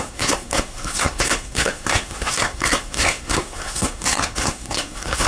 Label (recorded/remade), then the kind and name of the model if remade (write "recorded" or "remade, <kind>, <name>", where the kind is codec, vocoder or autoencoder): remade, codec, SNAC